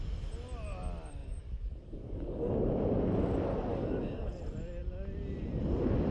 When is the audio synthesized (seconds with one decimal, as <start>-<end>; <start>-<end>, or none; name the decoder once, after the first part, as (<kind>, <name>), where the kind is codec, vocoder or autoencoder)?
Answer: 1.2-2.5 (codec, DAC); 3.7-4.3